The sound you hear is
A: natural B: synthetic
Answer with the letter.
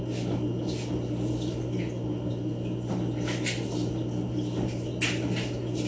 A